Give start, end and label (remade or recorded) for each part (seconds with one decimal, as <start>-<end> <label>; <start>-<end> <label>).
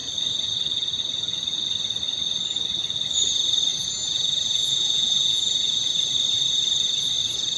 0.0-3.7 recorded; 3.7-6.0 remade; 6.0-7.6 recorded